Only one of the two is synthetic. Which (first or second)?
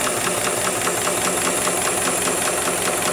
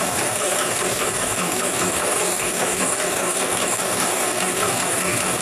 second